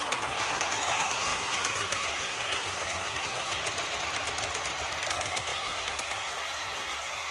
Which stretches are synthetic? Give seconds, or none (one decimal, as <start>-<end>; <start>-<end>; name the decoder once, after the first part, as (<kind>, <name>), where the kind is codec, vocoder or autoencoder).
0.0-3.6 (codec, SNAC); 5.1-7.3

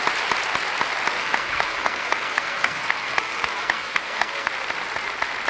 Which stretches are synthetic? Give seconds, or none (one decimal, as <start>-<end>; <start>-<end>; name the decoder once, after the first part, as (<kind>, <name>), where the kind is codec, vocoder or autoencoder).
1.2-4.5 (codec, SNAC)

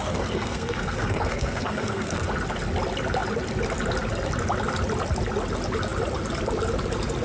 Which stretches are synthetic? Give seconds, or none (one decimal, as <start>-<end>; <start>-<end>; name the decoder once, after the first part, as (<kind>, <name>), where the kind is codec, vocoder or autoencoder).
0.0-2.3 (codec, SNAC)

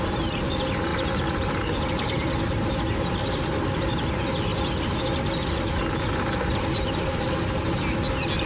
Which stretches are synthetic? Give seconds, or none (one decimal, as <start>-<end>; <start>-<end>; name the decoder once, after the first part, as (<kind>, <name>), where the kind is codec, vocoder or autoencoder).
none